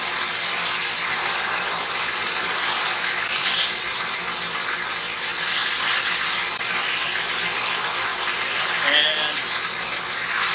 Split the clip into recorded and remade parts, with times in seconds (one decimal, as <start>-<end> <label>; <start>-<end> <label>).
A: 0.0-10.5 recorded